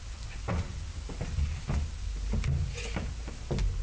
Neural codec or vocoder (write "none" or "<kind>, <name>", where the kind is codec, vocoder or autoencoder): none